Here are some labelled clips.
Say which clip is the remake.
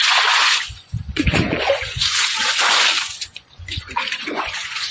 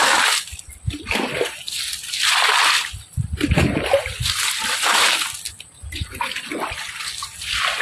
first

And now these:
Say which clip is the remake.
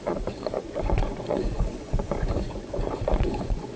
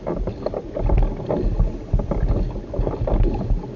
first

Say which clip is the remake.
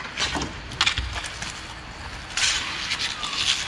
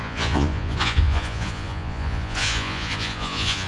second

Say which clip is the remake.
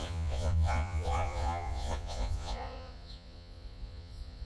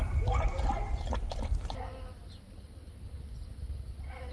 first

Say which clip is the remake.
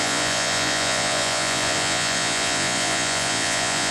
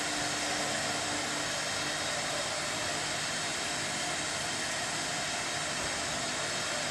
first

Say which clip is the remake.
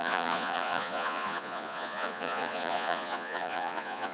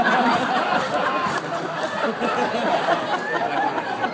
first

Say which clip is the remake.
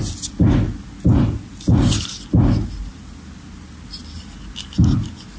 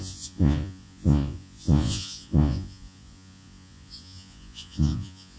second